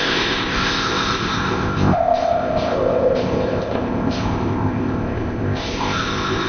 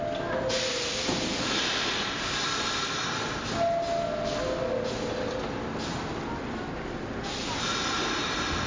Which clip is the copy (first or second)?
first